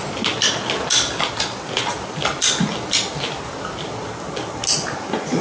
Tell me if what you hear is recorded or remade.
recorded